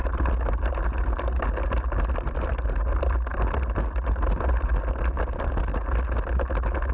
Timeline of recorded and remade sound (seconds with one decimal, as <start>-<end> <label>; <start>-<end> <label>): 0.0-6.9 recorded